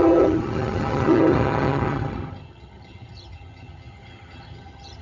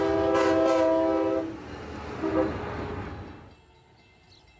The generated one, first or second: first